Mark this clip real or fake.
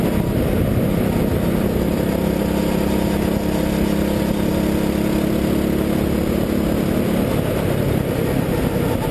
real